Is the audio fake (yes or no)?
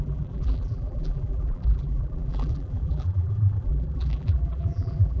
yes